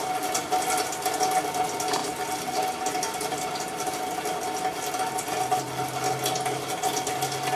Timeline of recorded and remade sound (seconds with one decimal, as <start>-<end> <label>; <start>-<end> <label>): 0.0-7.6 recorded